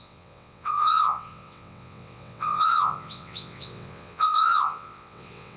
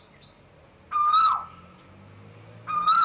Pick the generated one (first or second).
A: first